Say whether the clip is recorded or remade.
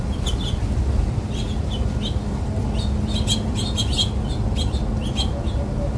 recorded